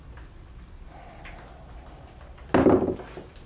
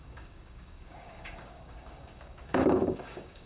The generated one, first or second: second